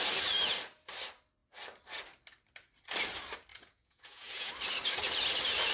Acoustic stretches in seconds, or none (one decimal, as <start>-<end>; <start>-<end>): 0.0-3.5; 4.5-5.7